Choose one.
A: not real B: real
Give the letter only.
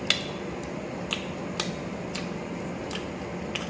B